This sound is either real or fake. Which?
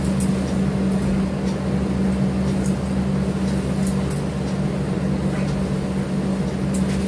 real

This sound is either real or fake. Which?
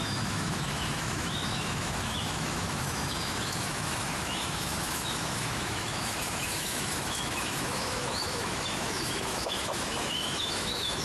fake